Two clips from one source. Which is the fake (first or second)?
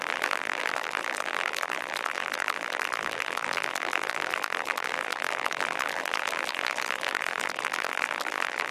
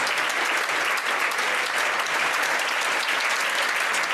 first